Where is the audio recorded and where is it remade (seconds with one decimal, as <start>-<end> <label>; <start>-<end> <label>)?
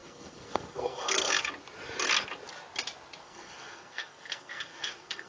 0.0-1.5 remade; 1.5-3.2 recorded; 3.2-5.3 remade